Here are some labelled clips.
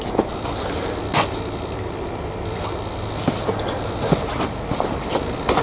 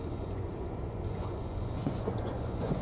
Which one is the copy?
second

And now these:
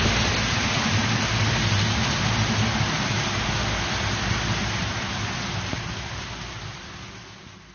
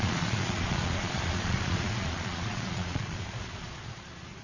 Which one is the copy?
second